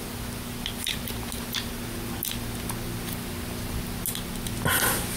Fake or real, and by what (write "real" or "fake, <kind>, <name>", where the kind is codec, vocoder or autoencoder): real